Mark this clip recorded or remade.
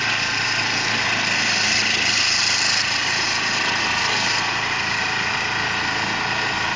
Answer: recorded